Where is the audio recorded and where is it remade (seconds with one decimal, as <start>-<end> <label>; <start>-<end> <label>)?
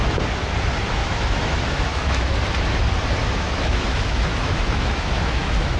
0.0-1.0 recorded; 1.0-2.3 remade; 2.3-3.2 recorded; 3.2-5.8 remade